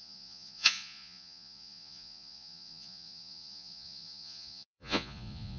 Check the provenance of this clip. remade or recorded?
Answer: remade